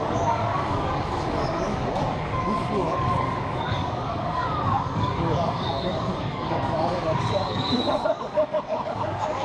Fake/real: fake